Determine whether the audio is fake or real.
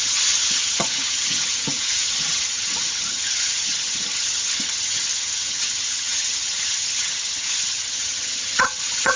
fake